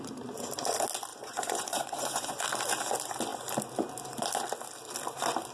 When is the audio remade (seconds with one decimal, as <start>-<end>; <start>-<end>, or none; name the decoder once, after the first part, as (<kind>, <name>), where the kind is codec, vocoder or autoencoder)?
1.1-2.4 (vocoder, Vocos)